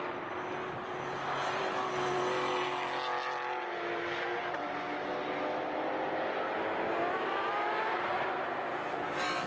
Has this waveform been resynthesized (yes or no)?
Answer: no